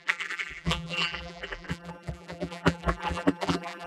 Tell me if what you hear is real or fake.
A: fake